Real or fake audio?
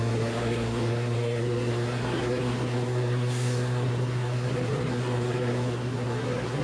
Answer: fake